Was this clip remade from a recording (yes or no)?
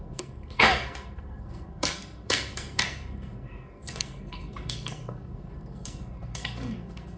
yes